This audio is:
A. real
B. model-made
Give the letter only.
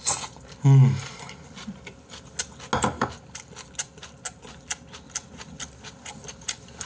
A